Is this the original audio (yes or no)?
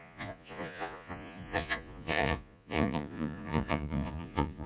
no